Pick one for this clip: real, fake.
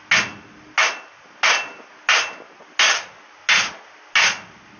real